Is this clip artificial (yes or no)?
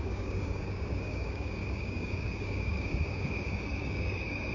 yes